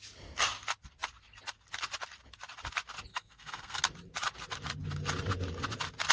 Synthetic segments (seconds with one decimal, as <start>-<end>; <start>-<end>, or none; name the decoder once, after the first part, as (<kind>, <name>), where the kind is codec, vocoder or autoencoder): 3.1-3.8 (codec, SNAC)